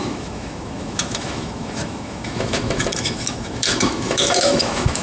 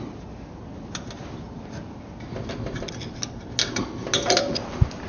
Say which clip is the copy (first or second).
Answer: first